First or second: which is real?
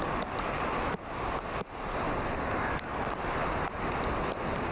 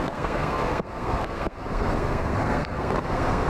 first